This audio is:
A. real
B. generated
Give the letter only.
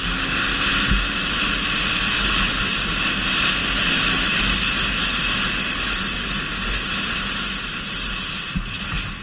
A